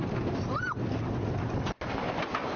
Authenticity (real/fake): real